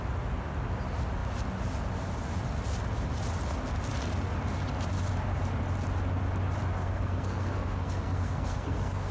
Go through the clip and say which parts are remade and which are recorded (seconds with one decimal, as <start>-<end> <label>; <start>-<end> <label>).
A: 0.0-6.7 recorded; 6.7-9.1 remade